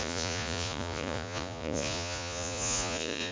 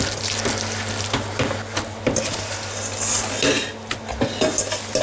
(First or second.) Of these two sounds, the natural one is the second